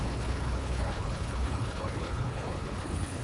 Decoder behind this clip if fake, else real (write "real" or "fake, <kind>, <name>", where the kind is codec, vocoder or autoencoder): fake, codec, HILCodec